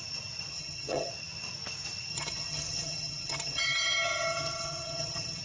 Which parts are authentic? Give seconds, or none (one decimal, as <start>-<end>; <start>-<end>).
0.0-0.5; 1.1-2.1

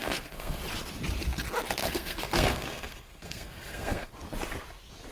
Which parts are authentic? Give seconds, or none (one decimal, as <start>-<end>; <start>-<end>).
0.6-1.8; 4.1-5.1

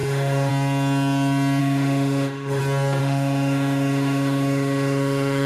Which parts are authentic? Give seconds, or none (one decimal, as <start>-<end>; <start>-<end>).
0.5-1.6; 2.6-3.0

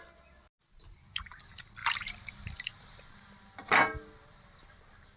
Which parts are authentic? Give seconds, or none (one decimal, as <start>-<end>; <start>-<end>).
0.0-1.8; 3.0-5.2